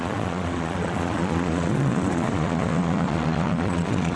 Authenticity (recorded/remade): remade